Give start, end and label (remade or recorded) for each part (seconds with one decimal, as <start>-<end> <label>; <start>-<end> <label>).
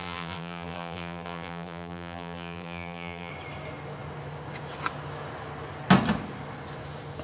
0.0-3.3 remade; 3.3-7.2 recorded